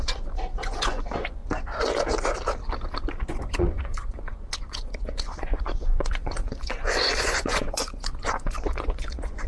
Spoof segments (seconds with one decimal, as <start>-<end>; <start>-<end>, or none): 0.0-1.4; 3.3-9.5